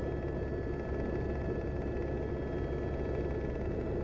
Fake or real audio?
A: real